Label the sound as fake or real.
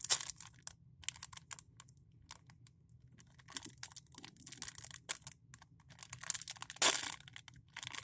real